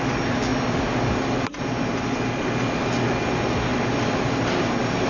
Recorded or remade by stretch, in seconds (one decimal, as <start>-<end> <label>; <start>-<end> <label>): 0.0-5.1 recorded